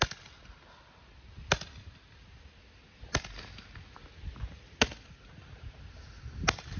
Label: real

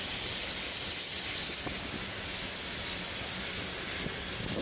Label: real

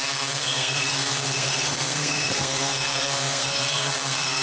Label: fake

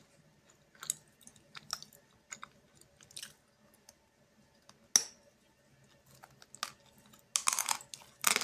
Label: real